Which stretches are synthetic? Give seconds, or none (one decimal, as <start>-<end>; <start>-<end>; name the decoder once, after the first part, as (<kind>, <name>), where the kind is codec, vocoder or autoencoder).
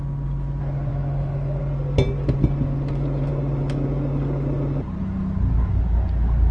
0.9-1.6 (autoencoder, DAC-VAE)